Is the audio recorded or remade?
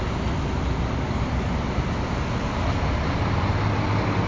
recorded